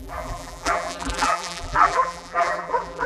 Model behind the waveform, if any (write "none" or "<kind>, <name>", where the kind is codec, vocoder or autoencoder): vocoder, BigVGAN v2